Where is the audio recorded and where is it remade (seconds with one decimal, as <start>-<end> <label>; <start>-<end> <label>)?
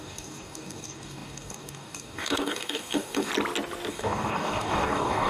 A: 0.0-3.3 remade; 3.3-3.9 recorded; 3.9-5.3 remade